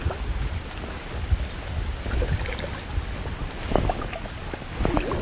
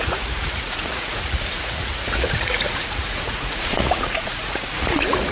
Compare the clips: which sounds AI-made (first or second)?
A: second